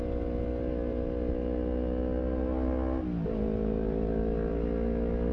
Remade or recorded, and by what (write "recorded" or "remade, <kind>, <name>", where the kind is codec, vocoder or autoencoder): recorded